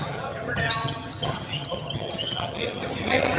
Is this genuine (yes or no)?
no